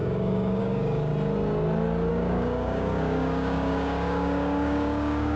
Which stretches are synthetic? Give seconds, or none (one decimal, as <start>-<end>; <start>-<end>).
0.0-1.1; 2.1-5.4